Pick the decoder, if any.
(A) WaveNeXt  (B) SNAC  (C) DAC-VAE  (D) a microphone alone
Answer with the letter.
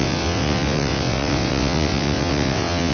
A